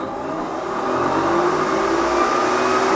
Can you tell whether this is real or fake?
real